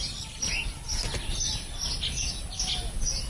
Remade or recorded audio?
recorded